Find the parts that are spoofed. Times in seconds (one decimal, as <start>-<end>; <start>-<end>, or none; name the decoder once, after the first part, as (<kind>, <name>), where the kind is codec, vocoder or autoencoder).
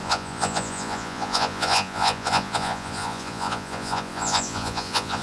0.0-5.2 (vocoder, Vocos)